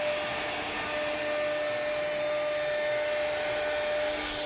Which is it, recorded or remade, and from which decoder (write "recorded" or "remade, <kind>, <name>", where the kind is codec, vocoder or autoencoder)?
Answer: recorded